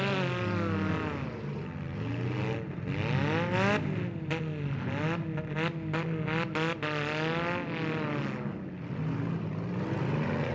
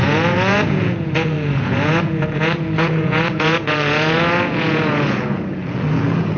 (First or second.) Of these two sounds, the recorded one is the first